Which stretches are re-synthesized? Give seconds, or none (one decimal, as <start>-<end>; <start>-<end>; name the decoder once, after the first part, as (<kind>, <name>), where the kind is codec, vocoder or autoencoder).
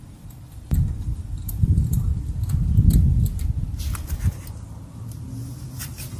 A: 0.0-2.1 (vocoder, BigVGAN v2); 5.8-6.2